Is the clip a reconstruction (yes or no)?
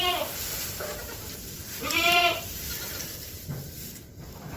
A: yes